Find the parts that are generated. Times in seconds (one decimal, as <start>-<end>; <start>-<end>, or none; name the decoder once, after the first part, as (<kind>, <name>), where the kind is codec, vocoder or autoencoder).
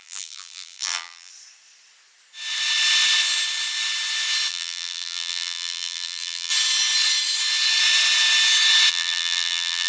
0.0-1.3 (vocoder, BigVGAN v2); 4.5-6.5; 8.9-9.9